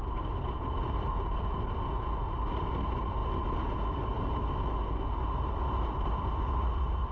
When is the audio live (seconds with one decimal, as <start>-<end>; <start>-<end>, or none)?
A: 0.0-7.1